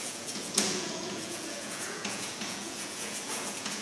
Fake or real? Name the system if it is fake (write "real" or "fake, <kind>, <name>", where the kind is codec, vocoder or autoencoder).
fake, vocoder, Vocos